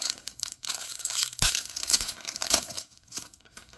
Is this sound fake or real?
fake